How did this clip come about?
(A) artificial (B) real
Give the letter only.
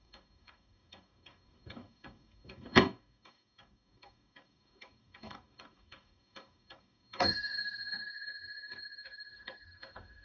A